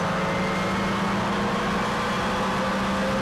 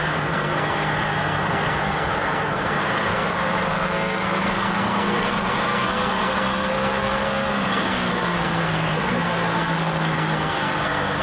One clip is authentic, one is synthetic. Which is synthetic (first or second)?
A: second